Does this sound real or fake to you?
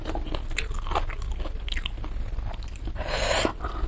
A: real